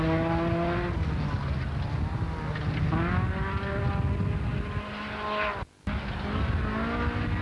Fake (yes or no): no